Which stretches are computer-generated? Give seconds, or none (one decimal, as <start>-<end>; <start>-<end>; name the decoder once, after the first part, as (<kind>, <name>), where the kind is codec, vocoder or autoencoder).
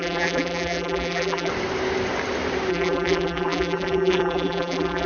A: 0.0-1.5 (vocoder, BigVGAN v2); 2.7-5.1